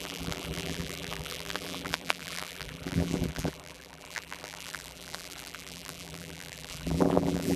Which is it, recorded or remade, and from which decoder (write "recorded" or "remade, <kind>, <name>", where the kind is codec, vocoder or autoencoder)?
remade, vocoder, BigVGAN v2